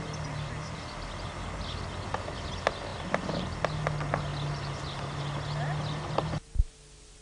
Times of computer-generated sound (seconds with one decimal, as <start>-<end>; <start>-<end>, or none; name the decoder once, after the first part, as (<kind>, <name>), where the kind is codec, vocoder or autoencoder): none